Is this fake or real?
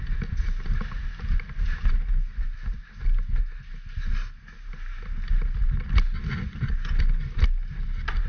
real